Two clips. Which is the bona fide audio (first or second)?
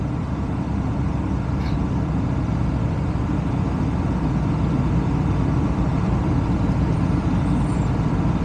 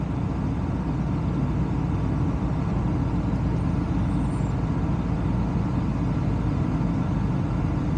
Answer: second